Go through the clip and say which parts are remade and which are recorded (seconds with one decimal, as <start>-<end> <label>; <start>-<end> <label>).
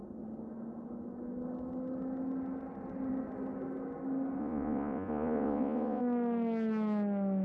0.0-4.4 recorded; 4.4-6.0 remade; 6.0-7.4 recorded